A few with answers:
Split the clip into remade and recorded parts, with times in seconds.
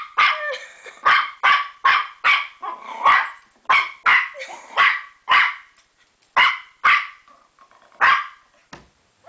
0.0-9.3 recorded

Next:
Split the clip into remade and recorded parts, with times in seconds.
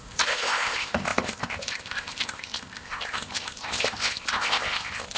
0.0-5.2 remade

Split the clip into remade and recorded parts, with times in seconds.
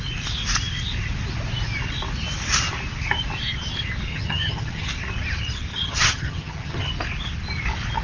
0.0-4.1 recorded; 4.1-4.9 remade; 4.9-5.7 recorded; 5.7-6.9 remade; 6.9-8.0 recorded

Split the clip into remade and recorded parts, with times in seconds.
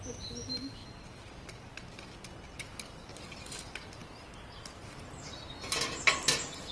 0.0-6.7 recorded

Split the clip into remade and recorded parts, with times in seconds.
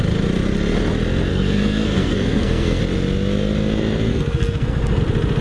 0.0-1.3 recorded; 1.3-2.8 remade; 2.8-4.1 recorded; 4.1-5.0 remade; 5.0-5.4 recorded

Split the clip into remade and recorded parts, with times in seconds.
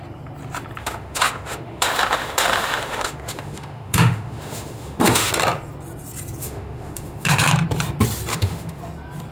0.0-0.8 recorded; 0.8-5.3 remade; 5.3-6.4 recorded; 6.4-7.5 remade; 7.5-8.3 recorded; 8.3-8.8 remade; 8.8-9.3 recorded